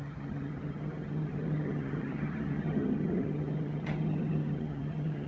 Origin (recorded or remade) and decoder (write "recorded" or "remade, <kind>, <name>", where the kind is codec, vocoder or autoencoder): remade, vocoder, HiFi-GAN